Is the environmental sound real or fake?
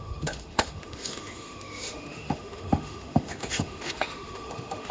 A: fake